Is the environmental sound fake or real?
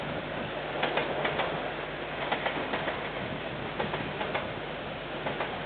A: real